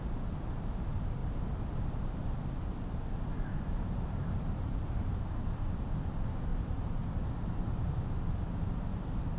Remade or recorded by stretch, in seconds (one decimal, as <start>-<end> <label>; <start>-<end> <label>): 0.0-3.5 recorded; 3.5-5.2 remade; 5.2-6.5 recorded; 6.5-7.2 remade; 7.2-9.4 recorded